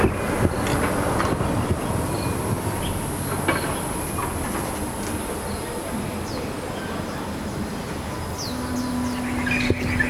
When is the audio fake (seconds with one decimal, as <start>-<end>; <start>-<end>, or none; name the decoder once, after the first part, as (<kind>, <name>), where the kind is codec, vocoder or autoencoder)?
none